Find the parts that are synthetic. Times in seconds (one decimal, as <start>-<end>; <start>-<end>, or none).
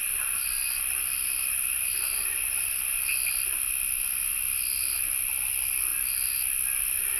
none